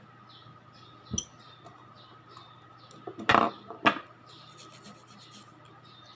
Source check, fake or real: real